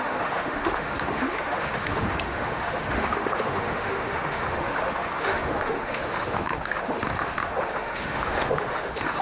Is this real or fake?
fake